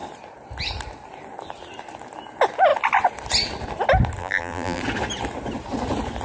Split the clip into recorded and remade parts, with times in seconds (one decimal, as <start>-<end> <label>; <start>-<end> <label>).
0.0-4.2 recorded; 4.2-4.8 remade; 4.8-6.2 recorded